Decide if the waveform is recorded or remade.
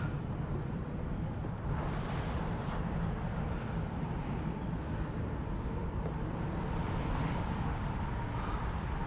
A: remade